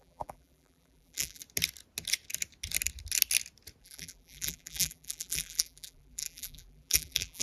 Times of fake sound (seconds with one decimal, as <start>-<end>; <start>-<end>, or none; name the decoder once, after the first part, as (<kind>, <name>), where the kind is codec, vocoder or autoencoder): 0.0-1.4 (vocoder, BigVGAN v2); 3.8-7.4